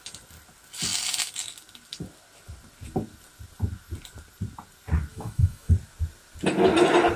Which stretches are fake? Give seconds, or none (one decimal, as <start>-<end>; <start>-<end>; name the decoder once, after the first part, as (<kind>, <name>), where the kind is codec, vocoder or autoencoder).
5.1-5.7 (autoencoder, DAC-VAE)